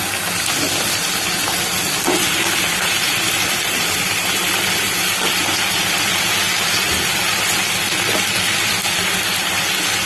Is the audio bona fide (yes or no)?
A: yes